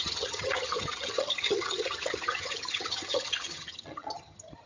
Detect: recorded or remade remade